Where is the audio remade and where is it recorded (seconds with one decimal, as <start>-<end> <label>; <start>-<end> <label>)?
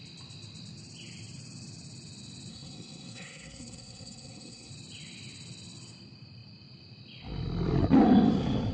0.0-2.5 recorded; 2.5-4.7 remade; 4.7-8.7 recorded